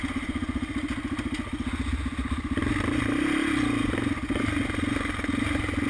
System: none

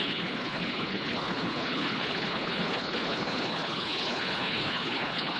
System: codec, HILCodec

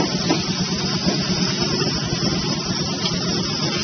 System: none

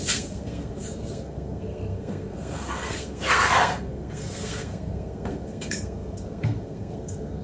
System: codec, SNAC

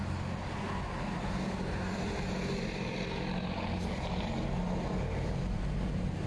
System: none